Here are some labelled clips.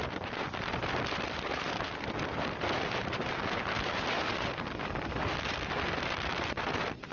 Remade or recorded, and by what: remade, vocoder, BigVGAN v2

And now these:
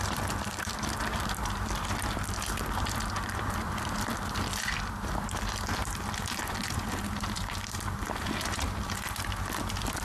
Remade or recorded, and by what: remade, vocoder, BigVGAN v2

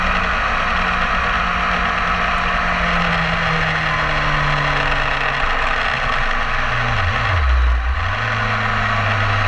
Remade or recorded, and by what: recorded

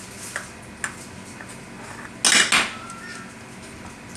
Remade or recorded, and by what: recorded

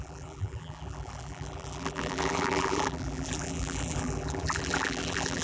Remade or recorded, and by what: remade, vocoder, BigVGAN v2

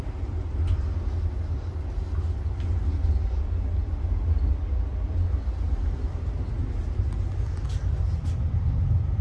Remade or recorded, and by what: recorded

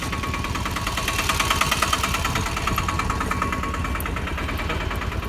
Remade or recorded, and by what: recorded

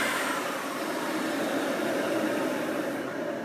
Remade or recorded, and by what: remade, vocoder, BigVGAN v2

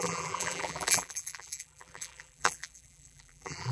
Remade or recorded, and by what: remade, vocoder, BigVGAN v2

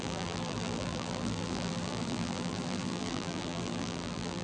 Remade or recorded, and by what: remade, vocoder, BigVGAN v2